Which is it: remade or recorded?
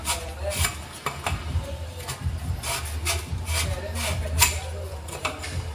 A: recorded